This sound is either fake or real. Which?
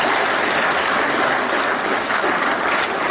real